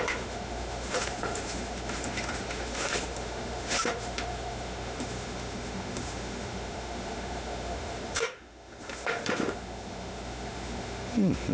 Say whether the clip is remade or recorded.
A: remade